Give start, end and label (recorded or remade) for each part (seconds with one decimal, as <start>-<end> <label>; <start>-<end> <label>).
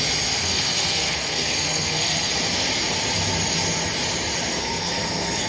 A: 0.0-0.4 recorded; 0.4-2.3 remade; 2.3-4.5 recorded; 4.5-5.5 remade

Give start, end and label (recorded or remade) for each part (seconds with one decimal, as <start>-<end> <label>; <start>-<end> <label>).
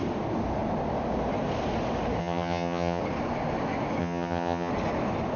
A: 0.0-2.2 recorded; 2.2-3.0 remade; 3.0-4.0 recorded; 4.0-4.7 remade; 4.7-5.4 recorded